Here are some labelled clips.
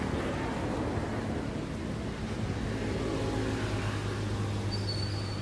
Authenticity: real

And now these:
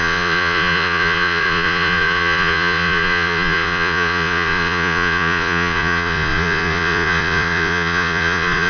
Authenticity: fake